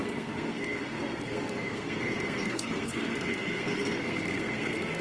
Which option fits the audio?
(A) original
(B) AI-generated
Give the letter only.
B